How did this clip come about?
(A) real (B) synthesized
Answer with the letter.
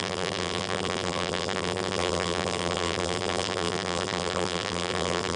B